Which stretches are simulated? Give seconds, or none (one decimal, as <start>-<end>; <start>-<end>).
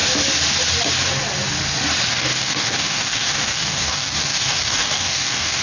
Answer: 2.1-5.6